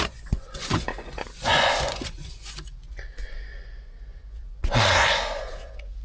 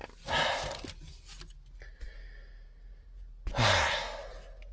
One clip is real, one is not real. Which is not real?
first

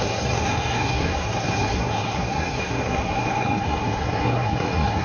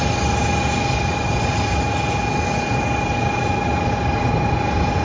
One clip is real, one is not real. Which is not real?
first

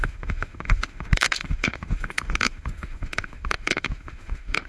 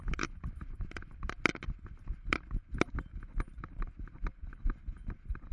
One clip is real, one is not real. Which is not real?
first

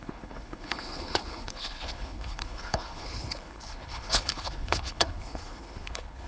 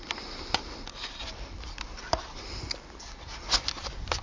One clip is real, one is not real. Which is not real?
first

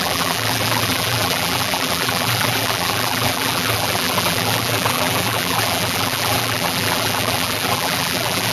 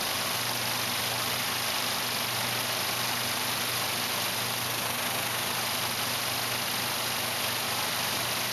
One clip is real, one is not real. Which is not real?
first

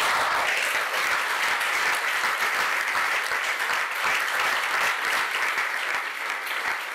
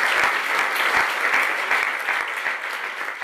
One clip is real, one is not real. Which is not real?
first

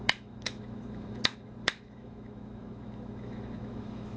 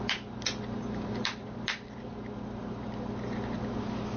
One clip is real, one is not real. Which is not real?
first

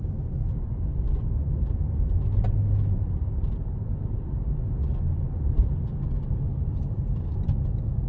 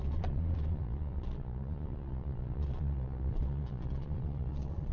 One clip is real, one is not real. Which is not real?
second